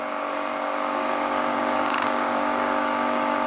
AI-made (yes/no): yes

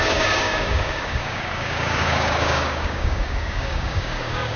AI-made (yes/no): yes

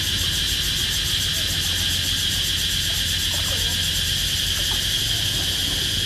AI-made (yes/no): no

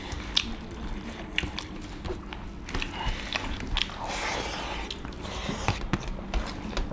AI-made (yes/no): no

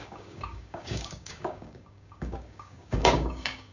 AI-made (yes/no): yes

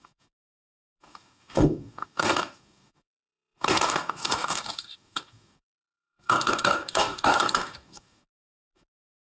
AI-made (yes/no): yes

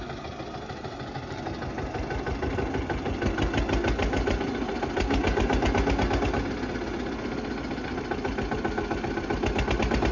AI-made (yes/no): no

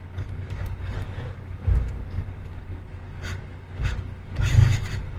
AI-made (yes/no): yes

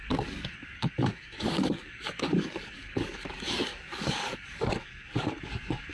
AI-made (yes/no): yes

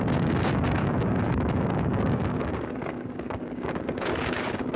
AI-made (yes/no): yes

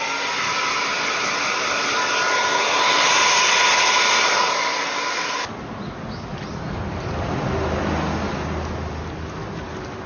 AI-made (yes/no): no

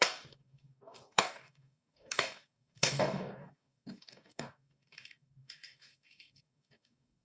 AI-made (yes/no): yes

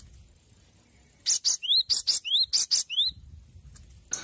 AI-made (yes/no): no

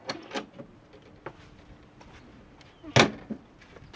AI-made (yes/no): no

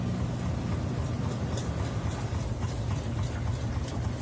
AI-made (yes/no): no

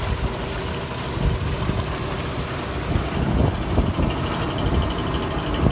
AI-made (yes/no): no